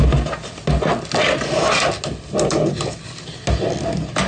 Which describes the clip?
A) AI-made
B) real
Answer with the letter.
B